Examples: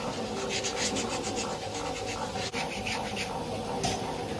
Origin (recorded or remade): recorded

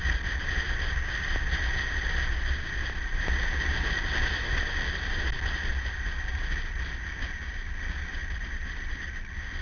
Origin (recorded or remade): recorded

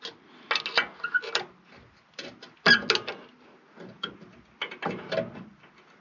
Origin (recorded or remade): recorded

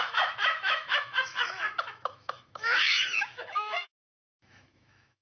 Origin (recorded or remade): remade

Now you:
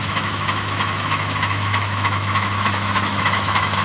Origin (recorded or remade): remade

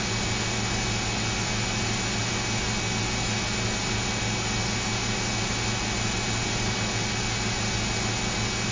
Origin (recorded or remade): recorded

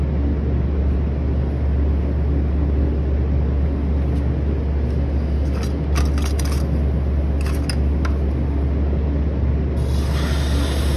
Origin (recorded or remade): recorded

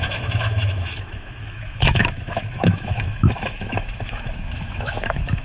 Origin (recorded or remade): remade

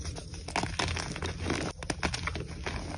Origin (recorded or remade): recorded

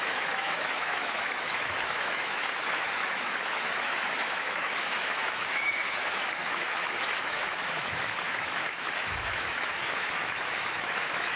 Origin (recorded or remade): remade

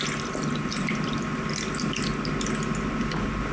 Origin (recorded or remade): recorded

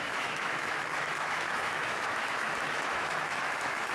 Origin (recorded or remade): remade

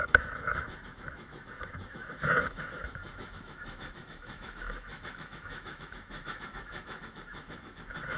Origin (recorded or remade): remade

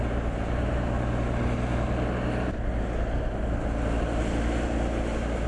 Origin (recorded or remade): recorded